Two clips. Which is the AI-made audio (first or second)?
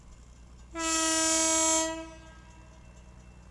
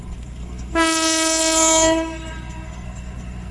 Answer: second